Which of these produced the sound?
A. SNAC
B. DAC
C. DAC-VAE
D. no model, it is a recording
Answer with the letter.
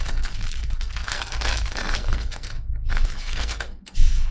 A